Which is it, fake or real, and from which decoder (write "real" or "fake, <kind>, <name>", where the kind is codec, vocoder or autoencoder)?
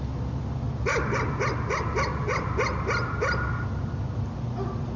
real